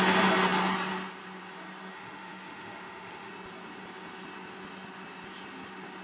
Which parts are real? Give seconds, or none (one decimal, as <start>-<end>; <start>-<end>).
0.0-1.9; 3.3-6.0